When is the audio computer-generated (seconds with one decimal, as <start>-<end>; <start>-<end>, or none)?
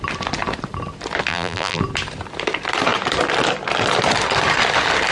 1.3-1.8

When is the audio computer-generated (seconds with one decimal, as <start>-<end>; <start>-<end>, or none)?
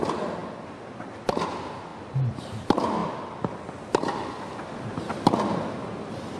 none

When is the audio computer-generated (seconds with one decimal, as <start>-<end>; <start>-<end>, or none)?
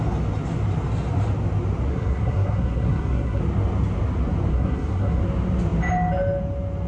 1.9-3.4; 4.5-5.2